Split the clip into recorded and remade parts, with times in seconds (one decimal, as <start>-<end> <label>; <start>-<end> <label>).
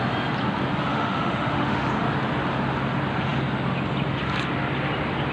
0.0-0.9 recorded; 0.9-1.9 remade; 1.9-5.3 recorded